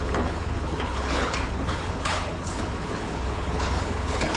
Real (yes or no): no